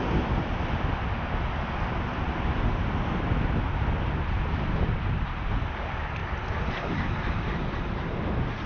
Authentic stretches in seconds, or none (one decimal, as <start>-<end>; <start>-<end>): 0.0-8.7